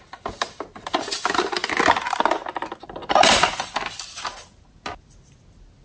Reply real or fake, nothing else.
real